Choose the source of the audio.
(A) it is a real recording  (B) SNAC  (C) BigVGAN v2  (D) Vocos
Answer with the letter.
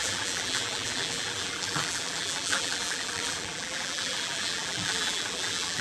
C